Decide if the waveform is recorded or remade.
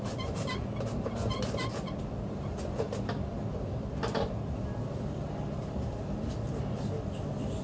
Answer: recorded